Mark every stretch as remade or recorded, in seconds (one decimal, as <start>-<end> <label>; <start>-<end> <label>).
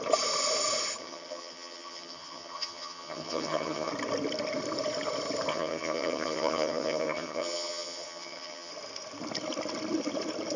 0.0-1.0 recorded; 1.0-3.9 remade; 3.9-5.5 recorded; 5.5-8.7 remade; 8.7-10.6 recorded